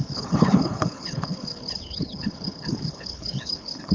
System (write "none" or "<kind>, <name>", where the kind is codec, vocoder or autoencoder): codec, HILCodec